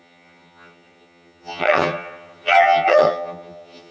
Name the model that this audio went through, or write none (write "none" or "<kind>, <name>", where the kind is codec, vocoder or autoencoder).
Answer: vocoder, HiFi-GAN